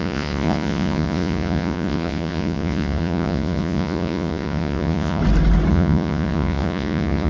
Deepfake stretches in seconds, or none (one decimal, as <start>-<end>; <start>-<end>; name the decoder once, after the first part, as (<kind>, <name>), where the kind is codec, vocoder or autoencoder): 0.0-5.2 (vocoder, Vocos); 5.7-7.3